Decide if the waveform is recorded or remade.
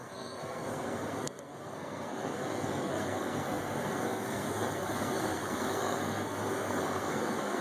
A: remade